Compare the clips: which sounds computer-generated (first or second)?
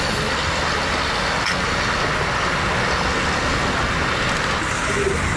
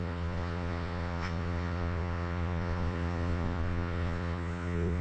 second